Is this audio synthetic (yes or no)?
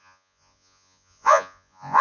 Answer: yes